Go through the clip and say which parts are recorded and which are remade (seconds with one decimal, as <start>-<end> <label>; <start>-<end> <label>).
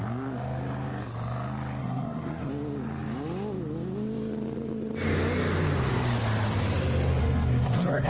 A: 0.0-1.8 recorded; 1.8-2.5 remade; 2.5-7.2 recorded; 7.2-8.1 remade